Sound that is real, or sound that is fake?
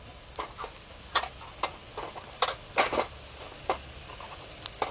real